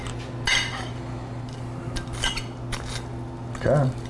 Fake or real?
real